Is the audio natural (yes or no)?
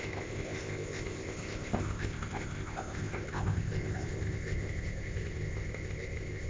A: no